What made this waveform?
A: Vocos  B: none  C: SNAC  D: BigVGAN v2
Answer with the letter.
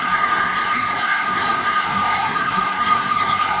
C